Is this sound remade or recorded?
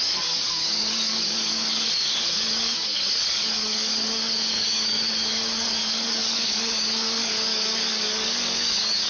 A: remade